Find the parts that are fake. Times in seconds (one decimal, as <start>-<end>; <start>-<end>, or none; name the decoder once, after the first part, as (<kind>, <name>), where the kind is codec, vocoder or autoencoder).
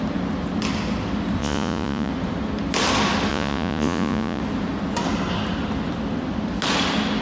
1.4-2.1 (vocoder, Vocos); 3.3-4.4